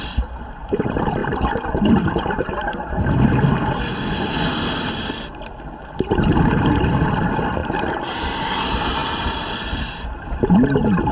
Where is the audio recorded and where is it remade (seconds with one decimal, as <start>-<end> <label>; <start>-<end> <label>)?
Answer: 0.0-7.6 recorded; 7.6-8.5 remade; 8.5-9.0 recorded; 9.0-10.3 remade; 10.3-11.1 recorded